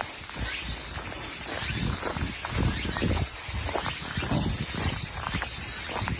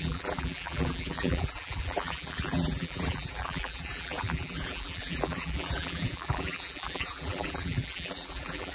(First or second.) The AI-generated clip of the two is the second